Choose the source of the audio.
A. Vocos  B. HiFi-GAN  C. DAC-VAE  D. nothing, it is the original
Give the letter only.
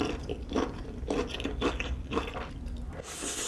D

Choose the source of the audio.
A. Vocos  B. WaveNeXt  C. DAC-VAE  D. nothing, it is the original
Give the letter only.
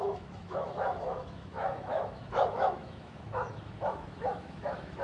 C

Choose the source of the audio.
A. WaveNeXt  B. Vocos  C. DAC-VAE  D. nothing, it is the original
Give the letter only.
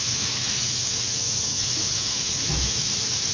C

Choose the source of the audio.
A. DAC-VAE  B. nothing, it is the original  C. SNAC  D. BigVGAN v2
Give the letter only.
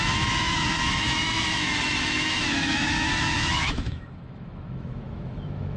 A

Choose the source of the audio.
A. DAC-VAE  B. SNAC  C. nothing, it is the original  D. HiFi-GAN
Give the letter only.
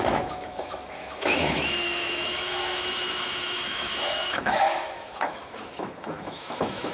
A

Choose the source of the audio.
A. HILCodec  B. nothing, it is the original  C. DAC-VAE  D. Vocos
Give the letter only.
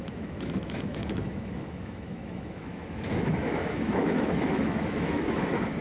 C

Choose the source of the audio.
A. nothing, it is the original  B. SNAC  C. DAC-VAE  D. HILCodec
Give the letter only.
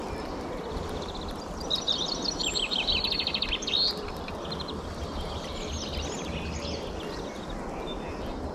A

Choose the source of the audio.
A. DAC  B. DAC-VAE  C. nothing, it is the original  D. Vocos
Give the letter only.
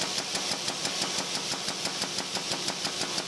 C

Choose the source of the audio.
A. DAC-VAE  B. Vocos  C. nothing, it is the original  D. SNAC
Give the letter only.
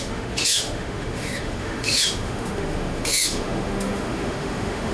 A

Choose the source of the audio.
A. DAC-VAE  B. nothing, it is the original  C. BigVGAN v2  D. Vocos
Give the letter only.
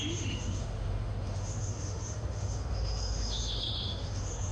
A